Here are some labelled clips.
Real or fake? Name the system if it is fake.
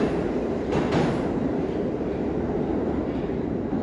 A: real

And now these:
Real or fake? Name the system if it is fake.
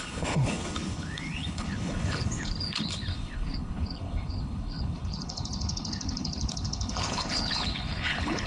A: fake, codec, HILCodec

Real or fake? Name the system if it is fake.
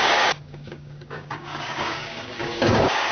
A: fake, codec, DAC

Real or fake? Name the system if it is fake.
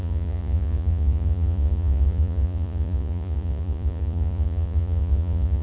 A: fake, vocoder, Vocos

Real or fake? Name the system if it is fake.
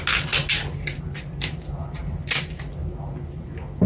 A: real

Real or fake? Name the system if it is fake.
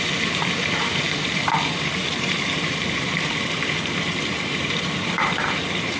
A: fake, vocoder, BigVGAN v2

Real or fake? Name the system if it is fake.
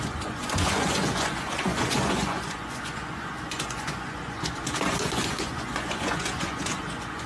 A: fake, vocoder, Vocos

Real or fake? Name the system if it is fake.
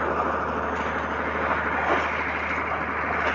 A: real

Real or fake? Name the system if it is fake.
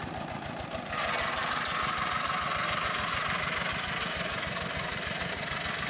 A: real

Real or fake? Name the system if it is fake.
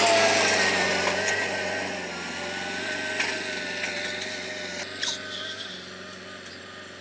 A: real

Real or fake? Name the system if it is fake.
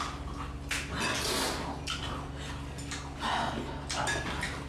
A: real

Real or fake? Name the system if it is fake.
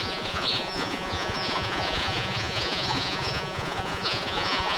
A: fake, vocoder, Vocos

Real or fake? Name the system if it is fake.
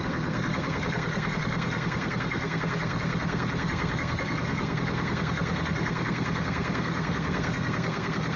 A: fake, codec, SNAC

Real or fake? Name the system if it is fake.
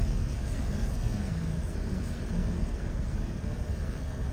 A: fake, codec, SNAC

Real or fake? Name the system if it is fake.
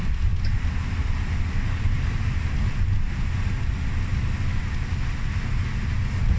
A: real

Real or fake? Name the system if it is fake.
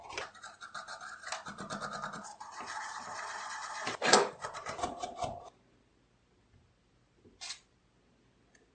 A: real